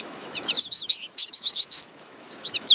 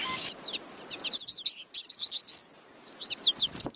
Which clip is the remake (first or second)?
first